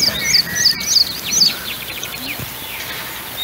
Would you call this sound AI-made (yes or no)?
no